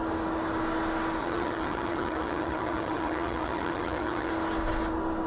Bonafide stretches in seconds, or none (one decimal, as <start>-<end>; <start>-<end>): 0.0-1.2; 4.3-5.3